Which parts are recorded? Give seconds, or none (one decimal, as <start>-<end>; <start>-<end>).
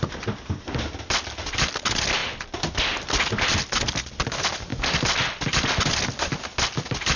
0.0-7.2